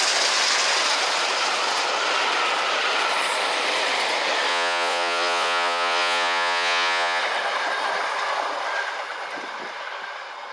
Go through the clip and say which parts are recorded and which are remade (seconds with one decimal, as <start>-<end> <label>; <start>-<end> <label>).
0.0-4.5 recorded; 4.5-7.2 remade; 7.2-10.5 recorded